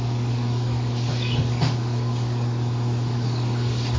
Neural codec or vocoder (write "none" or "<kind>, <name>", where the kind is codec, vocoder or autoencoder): codec, DAC